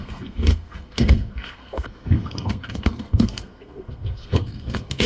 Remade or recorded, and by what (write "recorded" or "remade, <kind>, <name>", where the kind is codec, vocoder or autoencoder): remade, codec, SNAC